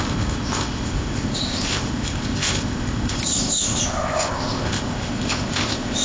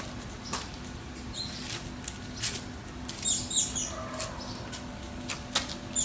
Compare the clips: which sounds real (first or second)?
second